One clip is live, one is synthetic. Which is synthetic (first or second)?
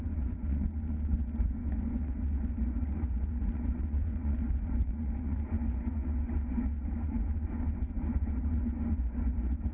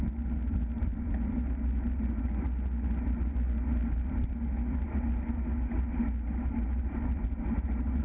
first